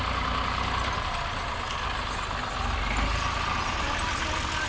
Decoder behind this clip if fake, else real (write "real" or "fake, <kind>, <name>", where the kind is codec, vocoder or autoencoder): real